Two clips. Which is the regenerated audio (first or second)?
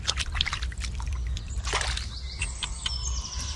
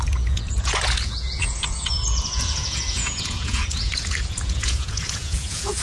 second